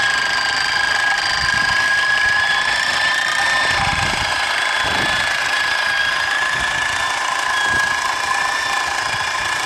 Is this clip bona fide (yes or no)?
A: yes